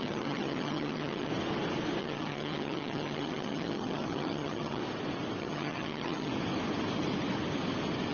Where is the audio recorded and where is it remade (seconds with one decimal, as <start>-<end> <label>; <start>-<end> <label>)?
0.0-1.3 remade; 1.3-2.0 recorded; 2.0-4.8 remade; 4.8-5.4 recorded; 5.4-6.3 remade; 6.3-8.1 recorded